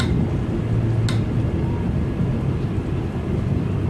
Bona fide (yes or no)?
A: yes